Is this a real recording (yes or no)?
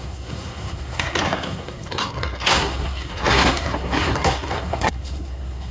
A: no